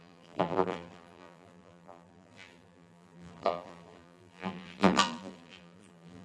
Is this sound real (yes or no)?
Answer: no